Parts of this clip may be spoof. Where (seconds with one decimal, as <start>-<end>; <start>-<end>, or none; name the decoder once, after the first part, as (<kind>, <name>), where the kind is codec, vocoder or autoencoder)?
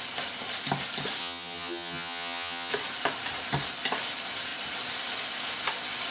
1.2-2.7 (vocoder, HiFi-GAN)